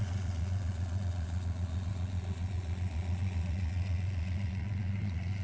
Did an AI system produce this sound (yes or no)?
yes